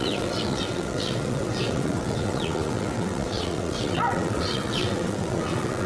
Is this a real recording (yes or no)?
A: no